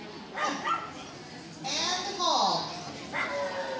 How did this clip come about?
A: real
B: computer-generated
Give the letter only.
A